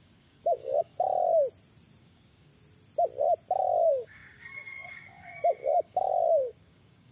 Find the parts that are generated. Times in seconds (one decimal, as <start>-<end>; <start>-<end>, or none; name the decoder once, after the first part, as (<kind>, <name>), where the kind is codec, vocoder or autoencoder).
0.0-0.9 (codec, DAC); 2.0-2.5; 3.6-7.1